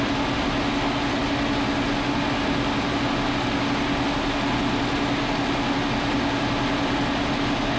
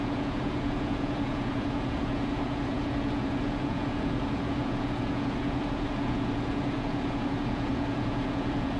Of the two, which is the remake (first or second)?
second